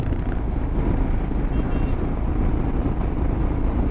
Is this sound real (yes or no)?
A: yes